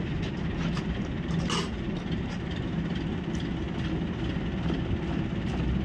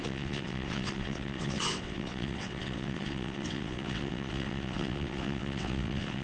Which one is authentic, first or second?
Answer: first